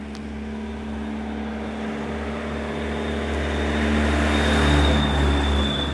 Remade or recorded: recorded